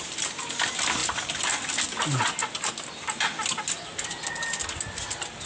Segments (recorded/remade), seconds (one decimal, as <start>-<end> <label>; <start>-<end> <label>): 0.0-5.5 recorded